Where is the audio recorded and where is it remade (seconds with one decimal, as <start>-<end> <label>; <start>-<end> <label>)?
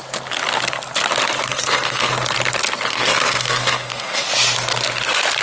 0.0-1.5 recorded; 1.5-2.1 remade; 2.1-2.9 recorded; 2.9-4.3 remade; 4.3-5.4 recorded